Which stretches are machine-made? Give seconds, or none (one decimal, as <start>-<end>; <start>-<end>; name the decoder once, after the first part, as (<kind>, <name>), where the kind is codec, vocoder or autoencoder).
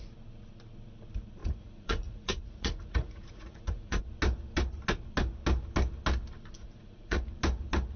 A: 1.4-4.0 (vocoder, Vocos); 6.6-7.2